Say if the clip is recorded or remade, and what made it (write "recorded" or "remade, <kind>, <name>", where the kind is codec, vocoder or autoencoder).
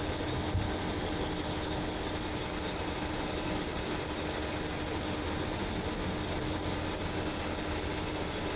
recorded